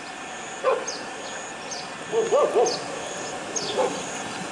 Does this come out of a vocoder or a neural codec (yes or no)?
no